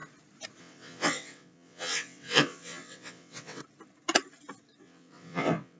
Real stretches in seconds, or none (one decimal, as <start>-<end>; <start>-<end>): 0.0-0.6; 3.6-4.8